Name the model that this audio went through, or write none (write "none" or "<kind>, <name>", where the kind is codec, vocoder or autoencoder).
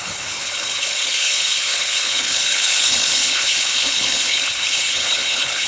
codec, HILCodec